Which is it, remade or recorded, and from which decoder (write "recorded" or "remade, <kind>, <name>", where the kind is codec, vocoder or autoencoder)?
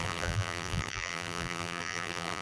remade, vocoder, BigVGAN v2